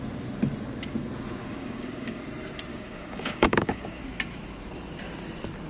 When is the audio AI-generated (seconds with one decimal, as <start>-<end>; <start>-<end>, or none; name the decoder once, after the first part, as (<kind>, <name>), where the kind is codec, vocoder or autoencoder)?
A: 1.4-2.2 (codec, DAC); 2.7-4.0